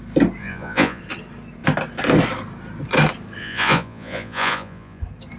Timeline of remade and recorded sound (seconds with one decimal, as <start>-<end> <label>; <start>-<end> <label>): 0.0-0.4 recorded; 0.4-1.0 remade; 1.0-3.4 recorded; 3.4-5.0 remade; 5.0-5.4 recorded